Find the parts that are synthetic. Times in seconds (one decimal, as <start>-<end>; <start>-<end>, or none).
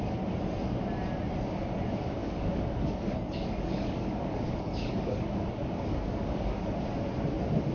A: 2.2-6.7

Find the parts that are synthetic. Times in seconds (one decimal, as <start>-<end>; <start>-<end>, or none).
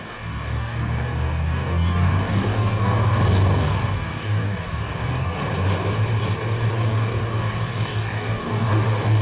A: 0.0-5.4; 6.7-9.2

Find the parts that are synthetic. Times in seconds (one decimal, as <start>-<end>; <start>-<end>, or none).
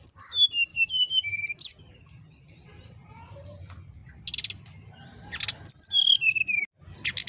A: 0.7-1.4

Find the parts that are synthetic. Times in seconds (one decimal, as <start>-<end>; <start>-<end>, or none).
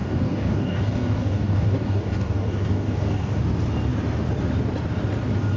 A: 0.0-3.4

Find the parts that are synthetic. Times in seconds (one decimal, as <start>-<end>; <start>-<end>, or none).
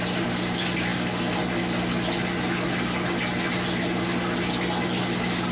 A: none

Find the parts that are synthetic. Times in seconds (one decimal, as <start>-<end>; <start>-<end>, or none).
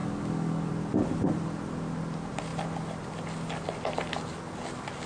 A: 0.0-0.7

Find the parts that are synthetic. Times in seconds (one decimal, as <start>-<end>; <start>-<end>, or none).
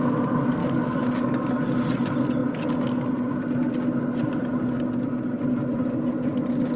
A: 0.6-1.5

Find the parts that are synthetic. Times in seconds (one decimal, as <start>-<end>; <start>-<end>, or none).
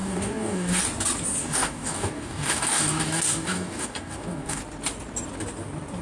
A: 0.0-0.8; 1.4-4.6